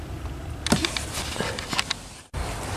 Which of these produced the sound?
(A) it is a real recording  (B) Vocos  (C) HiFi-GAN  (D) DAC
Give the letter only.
A